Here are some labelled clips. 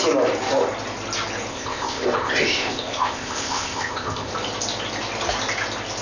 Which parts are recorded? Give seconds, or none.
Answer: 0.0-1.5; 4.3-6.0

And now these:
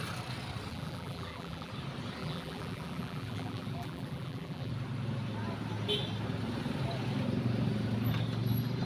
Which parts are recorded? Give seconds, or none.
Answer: 0.0-0.7; 1.7-2.2; 4.7-8.9